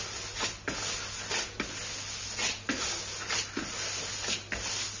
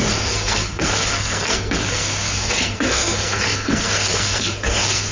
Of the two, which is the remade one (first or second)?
second